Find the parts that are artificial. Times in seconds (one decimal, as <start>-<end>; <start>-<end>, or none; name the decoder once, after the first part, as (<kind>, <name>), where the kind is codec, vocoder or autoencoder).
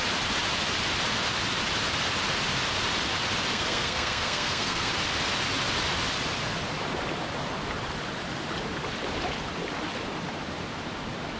3.5-4.9 (codec, SNAC)